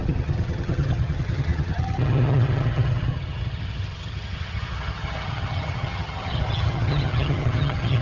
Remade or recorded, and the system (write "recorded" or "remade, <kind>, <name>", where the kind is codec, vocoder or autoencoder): remade, vocoder, HiFi-GAN